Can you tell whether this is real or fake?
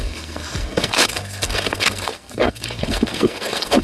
fake